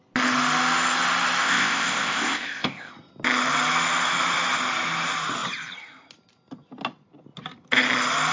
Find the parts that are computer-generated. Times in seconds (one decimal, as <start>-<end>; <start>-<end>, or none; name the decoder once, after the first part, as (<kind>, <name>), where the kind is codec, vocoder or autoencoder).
1.4-2.9 (codec, ZipCodec)